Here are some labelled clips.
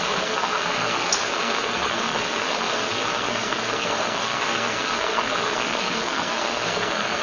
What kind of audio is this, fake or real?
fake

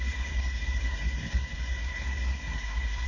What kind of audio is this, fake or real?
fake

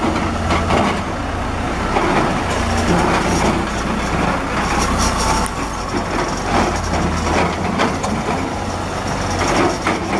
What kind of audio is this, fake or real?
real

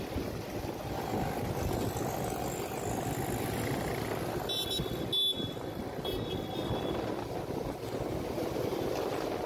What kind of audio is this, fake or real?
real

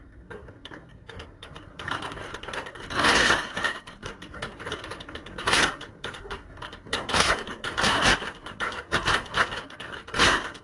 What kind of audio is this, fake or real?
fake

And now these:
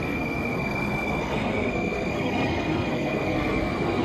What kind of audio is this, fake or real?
fake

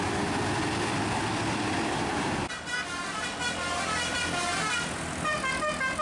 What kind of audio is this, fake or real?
real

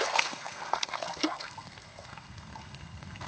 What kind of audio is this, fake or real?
fake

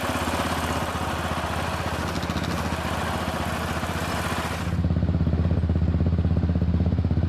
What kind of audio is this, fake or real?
real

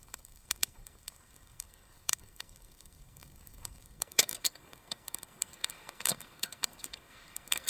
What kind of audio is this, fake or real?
fake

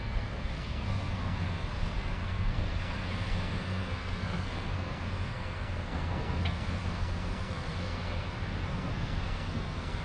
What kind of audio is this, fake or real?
fake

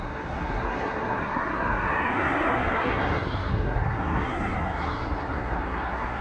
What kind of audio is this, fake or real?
fake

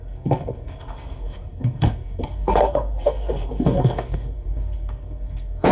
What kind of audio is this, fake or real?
fake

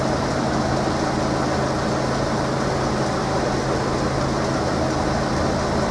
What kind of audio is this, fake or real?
real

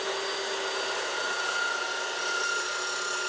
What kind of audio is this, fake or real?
real